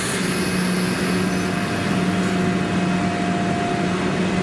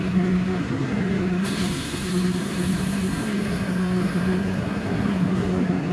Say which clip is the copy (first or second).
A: second